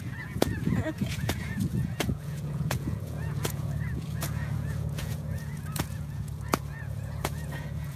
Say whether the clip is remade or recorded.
remade